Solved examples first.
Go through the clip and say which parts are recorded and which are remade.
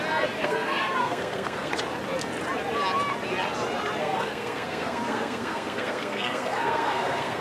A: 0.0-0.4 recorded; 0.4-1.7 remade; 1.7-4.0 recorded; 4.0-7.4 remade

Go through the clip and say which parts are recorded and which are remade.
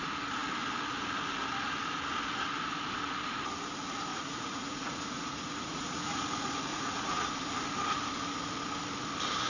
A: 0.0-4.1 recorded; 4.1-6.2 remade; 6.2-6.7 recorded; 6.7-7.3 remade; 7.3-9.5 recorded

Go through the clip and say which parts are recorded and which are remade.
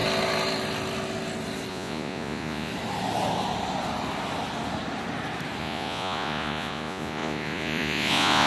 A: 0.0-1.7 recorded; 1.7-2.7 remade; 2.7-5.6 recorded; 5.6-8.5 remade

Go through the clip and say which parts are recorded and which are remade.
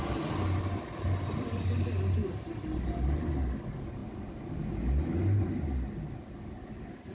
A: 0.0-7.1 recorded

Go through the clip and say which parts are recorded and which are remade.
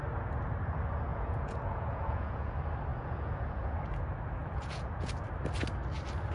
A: 0.0-1.1 recorded; 1.1-2.5 remade; 2.5-2.9 recorded; 2.9-3.7 remade; 3.7-4.4 recorded; 4.4-5.1 remade; 5.1-6.3 recorded